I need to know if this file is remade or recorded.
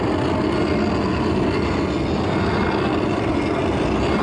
recorded